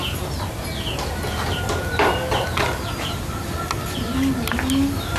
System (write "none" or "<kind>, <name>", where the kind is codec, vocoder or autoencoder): none